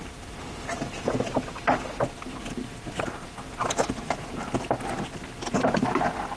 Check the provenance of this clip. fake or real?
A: real